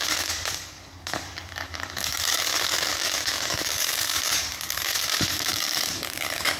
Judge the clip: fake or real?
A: fake